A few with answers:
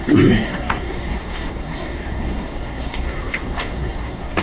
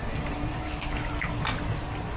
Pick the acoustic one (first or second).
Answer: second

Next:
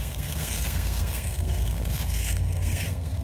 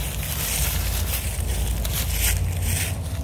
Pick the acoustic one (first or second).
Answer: second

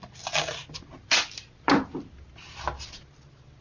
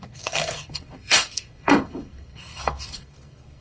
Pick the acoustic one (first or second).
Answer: first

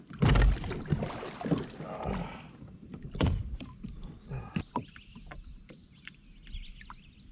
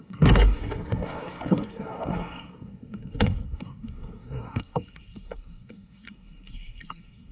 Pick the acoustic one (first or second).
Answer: first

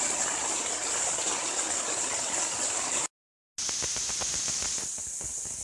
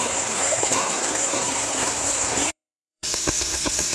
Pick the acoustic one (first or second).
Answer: first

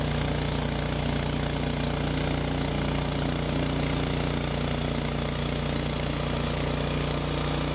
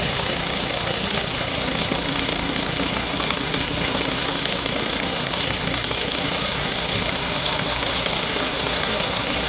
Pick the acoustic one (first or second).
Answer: first